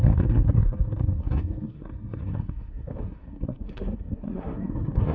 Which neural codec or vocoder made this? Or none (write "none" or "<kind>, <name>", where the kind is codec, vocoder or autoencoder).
codec, SNAC